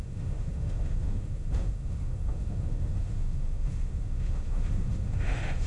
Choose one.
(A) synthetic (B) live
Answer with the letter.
A